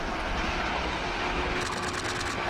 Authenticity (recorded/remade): recorded